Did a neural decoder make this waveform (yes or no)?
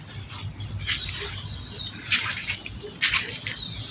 no